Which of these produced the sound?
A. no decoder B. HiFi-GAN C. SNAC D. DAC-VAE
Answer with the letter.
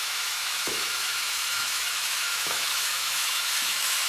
D